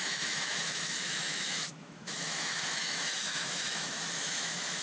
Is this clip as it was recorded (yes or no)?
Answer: no